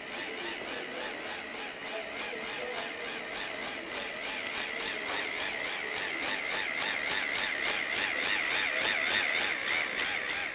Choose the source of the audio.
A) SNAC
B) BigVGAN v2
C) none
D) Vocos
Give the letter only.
C